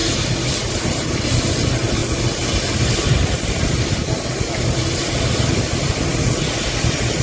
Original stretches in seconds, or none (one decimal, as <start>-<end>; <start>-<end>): 2.0-4.6; 6.1-7.2